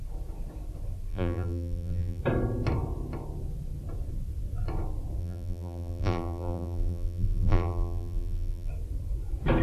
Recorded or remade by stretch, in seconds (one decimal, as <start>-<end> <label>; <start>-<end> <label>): 0.0-1.1 recorded; 1.1-2.2 remade; 2.2-5.2 recorded; 5.2-8.7 remade; 8.7-9.6 recorded